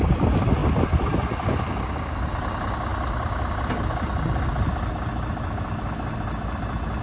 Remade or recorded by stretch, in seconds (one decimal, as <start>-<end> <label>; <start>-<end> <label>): 0.0-7.0 recorded